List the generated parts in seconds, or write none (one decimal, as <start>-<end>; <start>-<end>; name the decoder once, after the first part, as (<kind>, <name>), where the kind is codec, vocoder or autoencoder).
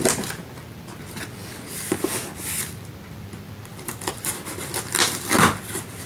3.7-4.5 (vocoder, BigVGAN v2)